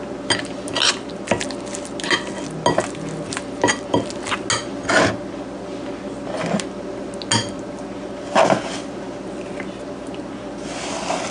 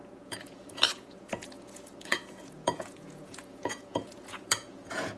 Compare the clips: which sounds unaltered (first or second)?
first